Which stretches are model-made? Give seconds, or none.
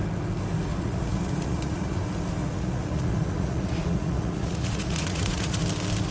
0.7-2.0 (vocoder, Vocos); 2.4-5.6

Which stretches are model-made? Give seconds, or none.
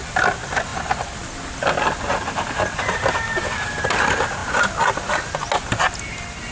none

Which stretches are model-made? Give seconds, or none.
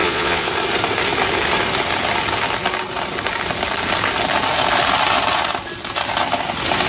0.0-0.5 (vocoder, Vocos)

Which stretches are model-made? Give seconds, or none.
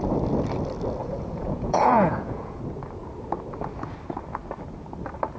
1.0-2.6 (vocoder, Vocos)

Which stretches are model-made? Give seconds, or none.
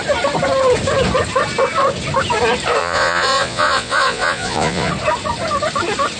2.8-4.9 (vocoder, Vocos)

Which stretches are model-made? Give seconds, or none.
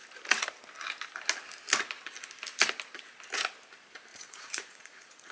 4.1-5.3 (vocoder, Vocos)